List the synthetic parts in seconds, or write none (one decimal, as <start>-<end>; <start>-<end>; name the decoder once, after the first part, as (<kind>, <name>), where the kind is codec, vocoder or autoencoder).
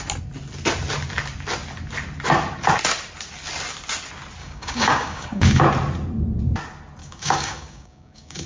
4.4-5.6 (codec, DAC); 7.0-8.5